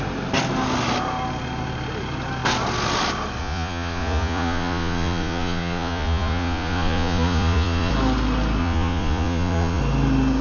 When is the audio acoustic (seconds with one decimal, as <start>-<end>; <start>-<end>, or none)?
0.0-3.4; 7.9-8.6; 9.8-10.4